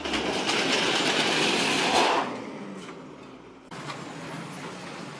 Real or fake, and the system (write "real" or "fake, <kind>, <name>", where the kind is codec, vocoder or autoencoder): real